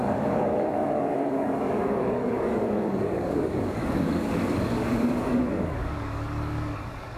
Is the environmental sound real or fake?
fake